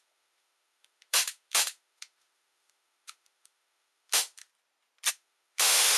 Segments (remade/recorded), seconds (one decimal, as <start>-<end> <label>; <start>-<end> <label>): 0.0-4.5 remade; 4.5-5.1 recorded; 5.1-6.0 remade